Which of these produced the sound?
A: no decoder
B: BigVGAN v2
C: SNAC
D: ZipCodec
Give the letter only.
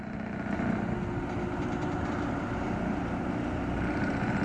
A